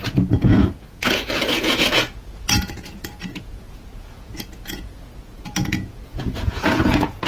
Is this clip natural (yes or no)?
no